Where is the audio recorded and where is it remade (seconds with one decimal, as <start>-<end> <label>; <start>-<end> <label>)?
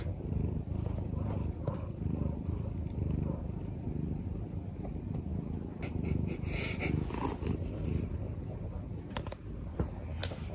0.0-10.5 recorded